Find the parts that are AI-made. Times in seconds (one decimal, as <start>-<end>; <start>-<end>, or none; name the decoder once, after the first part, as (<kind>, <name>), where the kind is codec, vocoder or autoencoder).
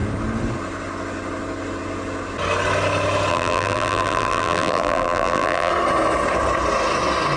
3.3-5.7 (vocoder, BigVGAN v2)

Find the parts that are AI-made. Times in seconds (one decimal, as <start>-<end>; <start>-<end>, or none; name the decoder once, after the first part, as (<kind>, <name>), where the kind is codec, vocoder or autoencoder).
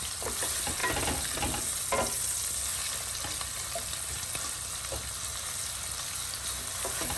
none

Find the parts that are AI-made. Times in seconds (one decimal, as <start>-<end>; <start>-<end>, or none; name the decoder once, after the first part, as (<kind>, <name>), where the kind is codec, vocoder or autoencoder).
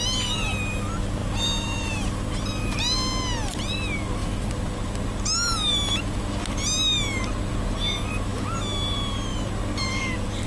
1.2-2.3 (vocoder, BigVGAN v2); 4.2-4.8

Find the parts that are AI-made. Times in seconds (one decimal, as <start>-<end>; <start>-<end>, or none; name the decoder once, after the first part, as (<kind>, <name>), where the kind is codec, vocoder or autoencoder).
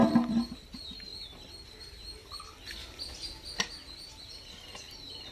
none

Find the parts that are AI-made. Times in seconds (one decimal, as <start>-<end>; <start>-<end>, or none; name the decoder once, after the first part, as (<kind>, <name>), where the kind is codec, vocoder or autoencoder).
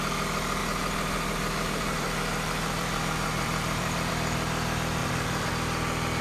0.6-4.1 (vocoder, BigVGAN v2); 5.0-5.5